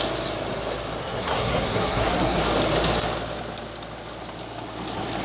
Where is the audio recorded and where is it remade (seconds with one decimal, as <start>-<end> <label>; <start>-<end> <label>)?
0.0-1.0 recorded; 1.0-2.4 remade; 2.4-5.2 recorded